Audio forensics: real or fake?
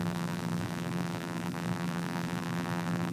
fake